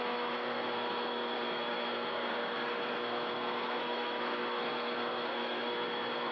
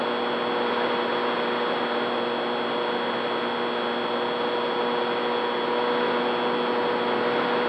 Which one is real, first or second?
second